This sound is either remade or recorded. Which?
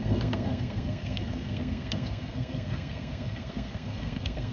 remade